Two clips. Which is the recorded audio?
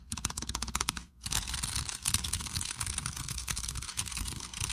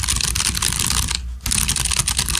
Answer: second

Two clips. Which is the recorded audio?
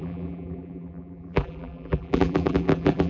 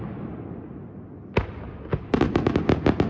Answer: second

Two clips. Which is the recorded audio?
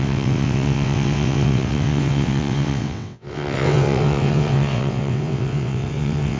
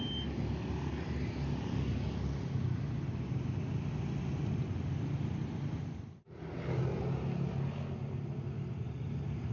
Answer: second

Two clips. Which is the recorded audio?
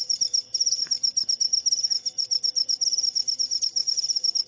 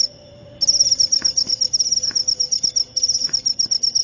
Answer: second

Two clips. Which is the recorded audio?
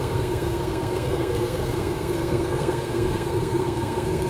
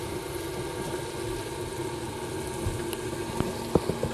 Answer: second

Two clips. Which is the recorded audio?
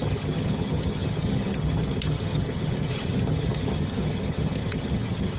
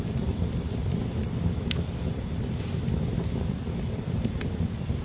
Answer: second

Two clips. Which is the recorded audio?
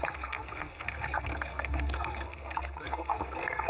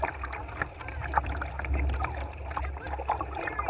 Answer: second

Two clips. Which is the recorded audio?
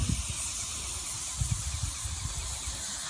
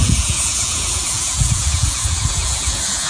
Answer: first